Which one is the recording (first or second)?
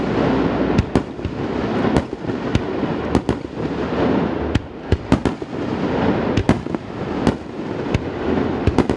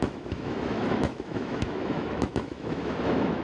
first